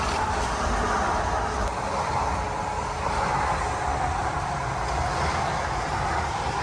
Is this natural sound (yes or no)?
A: yes